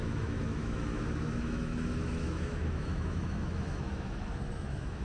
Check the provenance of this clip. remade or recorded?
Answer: remade